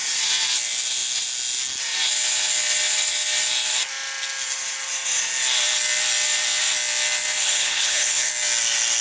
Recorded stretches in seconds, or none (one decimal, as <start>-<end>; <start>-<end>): 0.0-7.4; 8.3-9.0